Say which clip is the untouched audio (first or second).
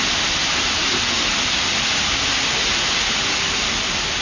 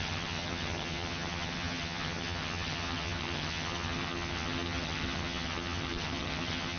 first